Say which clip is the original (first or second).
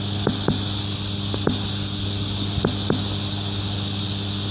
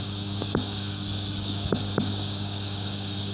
first